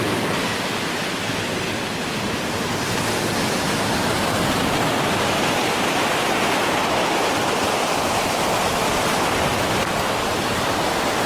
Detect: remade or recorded recorded